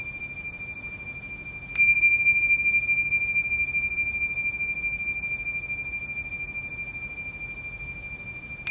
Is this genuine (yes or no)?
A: yes